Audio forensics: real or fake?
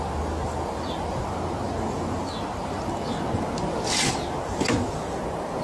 real